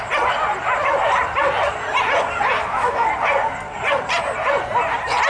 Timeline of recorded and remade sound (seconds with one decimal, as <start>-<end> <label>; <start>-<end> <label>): 0.0-2.6 recorded; 2.6-3.1 remade; 3.1-5.3 recorded